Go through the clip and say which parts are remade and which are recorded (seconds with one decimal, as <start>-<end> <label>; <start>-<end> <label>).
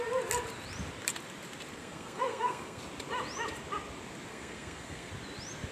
0.0-1.7 recorded; 1.7-2.8 remade; 2.8-4.3 recorded; 4.3-5.1 remade; 5.1-5.7 recorded